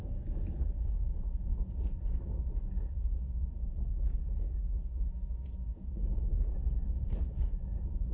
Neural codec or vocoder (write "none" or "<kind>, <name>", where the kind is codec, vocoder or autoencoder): vocoder, Vocos